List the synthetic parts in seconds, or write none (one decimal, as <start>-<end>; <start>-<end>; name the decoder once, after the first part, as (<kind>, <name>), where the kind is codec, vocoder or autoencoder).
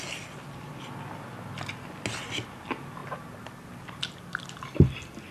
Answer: none